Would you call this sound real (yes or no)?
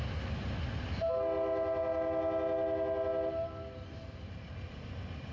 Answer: yes